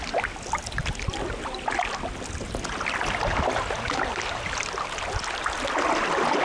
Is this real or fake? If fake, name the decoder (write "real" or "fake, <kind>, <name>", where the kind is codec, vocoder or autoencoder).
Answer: real